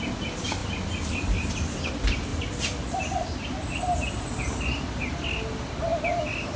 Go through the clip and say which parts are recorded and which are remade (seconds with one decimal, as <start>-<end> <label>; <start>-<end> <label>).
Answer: 0.0-2.3 recorded; 2.3-3.7 remade; 3.7-6.6 recorded